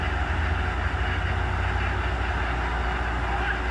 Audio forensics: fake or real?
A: real